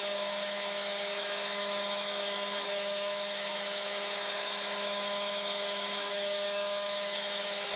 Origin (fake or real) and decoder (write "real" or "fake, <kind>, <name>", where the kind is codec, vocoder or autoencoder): fake, autoencoder, DAC-VAE